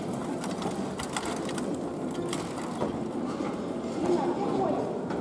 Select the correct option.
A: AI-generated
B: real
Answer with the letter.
B